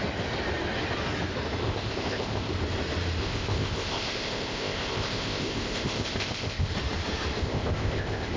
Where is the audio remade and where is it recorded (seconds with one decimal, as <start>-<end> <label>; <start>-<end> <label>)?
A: 0.0-1.6 recorded; 1.6-2.5 remade; 2.5-3.2 recorded; 3.2-6.7 remade; 6.7-7.4 recorded; 7.4-8.4 remade